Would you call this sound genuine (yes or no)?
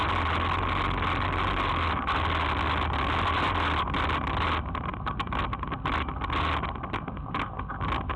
yes